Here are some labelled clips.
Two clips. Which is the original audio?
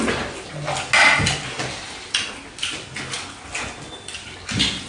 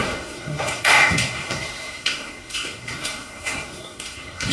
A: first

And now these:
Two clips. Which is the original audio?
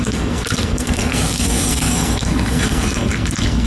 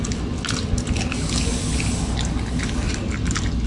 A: second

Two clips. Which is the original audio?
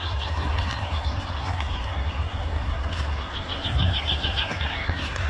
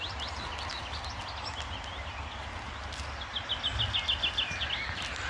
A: second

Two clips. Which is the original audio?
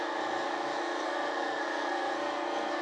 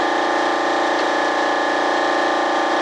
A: second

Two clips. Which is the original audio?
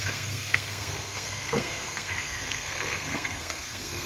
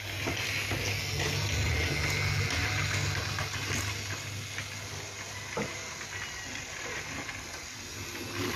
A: second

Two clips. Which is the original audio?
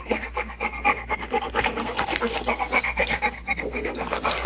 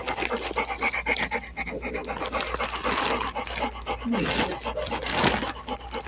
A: second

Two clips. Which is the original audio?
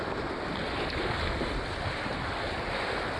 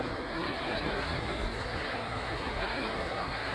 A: first